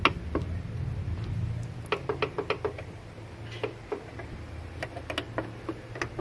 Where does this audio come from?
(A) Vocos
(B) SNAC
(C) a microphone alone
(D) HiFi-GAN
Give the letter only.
C